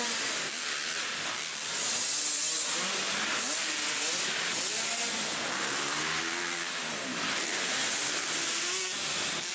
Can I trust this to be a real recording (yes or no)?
yes